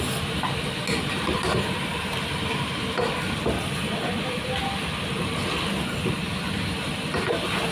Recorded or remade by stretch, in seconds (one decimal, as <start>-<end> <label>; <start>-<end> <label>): 0.0-7.7 recorded